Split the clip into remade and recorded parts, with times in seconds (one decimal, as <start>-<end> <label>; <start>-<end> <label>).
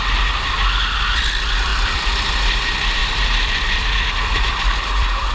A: 0.0-1.7 recorded; 1.7-2.3 remade; 2.3-3.0 recorded; 3.0-5.3 remade